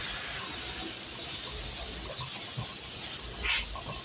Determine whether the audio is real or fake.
real